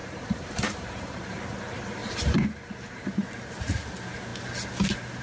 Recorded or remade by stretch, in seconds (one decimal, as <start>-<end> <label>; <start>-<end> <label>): 0.0-1.4 remade; 1.4-2.0 recorded; 2.0-3.1 remade; 3.1-5.2 recorded